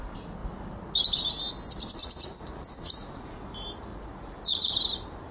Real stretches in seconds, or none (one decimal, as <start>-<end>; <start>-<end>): 0.0-2.0; 3.4-3.9; 4.7-5.3